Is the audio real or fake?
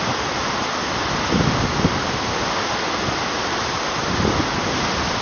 real